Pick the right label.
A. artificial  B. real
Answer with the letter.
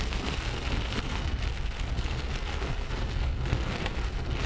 A